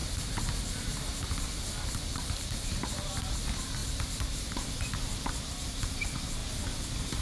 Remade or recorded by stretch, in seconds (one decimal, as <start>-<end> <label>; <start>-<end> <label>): 0.0-6.4 remade; 6.4-7.2 recorded